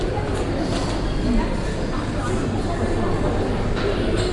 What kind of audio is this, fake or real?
real